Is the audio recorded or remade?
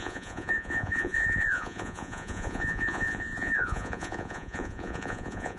remade